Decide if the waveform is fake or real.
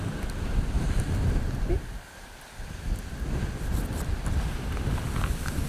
real